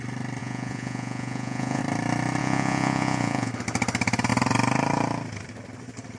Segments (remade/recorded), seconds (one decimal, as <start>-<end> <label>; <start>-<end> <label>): 0.0-0.4 recorded; 0.4-1.8 remade; 1.8-2.4 recorded; 2.4-3.5 remade; 3.5-6.2 recorded